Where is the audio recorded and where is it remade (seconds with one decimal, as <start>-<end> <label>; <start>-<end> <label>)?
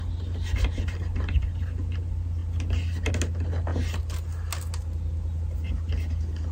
0.0-6.5 recorded